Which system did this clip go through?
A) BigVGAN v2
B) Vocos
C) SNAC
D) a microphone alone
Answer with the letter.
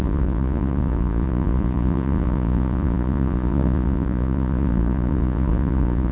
B